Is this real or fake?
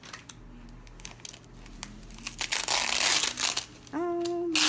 real